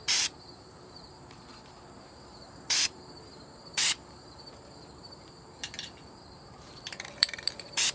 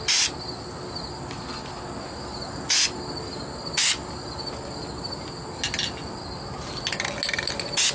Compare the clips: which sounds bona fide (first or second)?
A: second